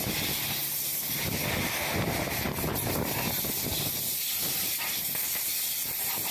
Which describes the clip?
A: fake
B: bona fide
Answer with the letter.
B